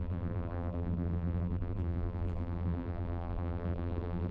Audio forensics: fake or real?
fake